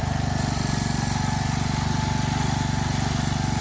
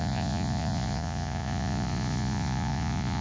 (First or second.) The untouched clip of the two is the first